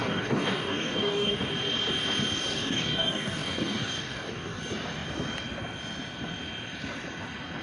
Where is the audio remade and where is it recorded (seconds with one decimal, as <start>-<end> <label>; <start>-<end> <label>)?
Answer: 0.0-1.5 remade; 1.5-2.5 recorded; 2.5-4.6 remade; 4.6-7.6 recorded